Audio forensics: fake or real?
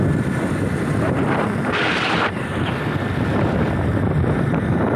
fake